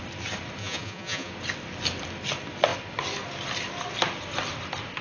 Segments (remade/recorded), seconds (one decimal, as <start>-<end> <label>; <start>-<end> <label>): 0.0-0.6 recorded; 0.6-1.3 remade; 1.3-5.0 recorded